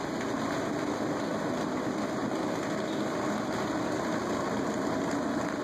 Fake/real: real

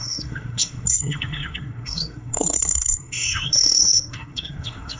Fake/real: fake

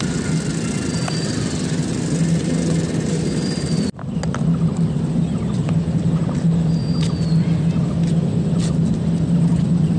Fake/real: real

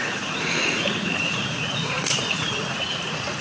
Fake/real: fake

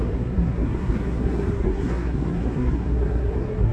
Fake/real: fake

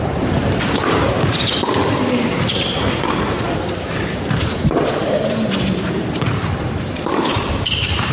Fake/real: fake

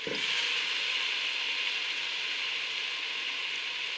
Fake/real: real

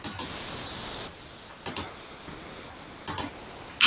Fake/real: real